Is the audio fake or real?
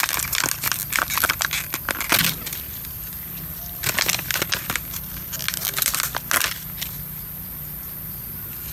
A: real